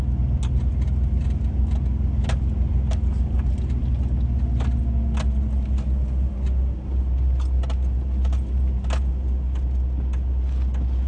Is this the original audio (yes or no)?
yes